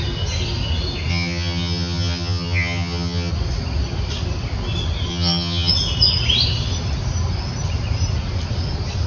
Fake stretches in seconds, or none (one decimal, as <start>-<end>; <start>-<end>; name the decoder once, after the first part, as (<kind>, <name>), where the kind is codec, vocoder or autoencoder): 1.1-3.3 (vocoder, HiFi-GAN); 5.1-5.7